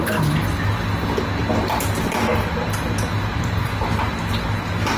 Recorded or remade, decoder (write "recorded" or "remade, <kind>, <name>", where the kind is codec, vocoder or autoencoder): recorded